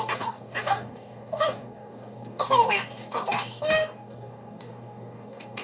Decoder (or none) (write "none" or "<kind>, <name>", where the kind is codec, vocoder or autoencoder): codec, DAC